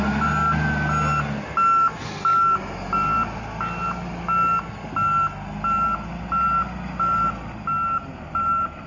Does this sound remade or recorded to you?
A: recorded